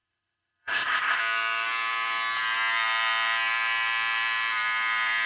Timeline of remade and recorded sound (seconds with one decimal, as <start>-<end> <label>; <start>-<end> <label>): 0.0-1.2 remade; 1.2-5.3 recorded